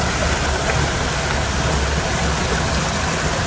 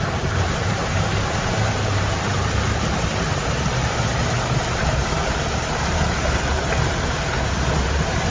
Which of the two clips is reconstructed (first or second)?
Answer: second